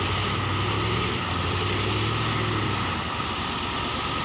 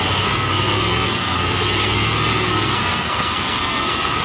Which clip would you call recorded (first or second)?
first